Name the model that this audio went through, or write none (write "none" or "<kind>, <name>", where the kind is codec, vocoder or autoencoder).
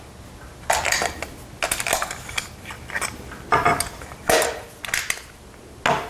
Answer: none